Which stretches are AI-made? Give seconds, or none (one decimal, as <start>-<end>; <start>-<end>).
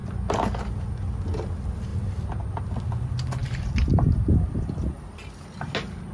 1.9-2.6; 3.4-5.2